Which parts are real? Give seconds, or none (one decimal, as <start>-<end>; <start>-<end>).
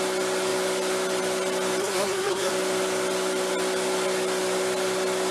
0.0-1.8; 2.5-5.3